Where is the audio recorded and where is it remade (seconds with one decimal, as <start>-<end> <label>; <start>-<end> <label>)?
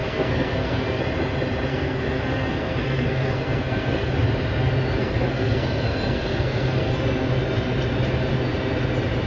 0.0-1.0 remade; 1.0-1.7 recorded; 1.7-4.1 remade; 4.1-5.0 recorded; 5.0-6.9 remade; 6.9-9.3 recorded